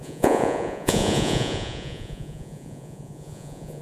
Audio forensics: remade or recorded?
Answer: remade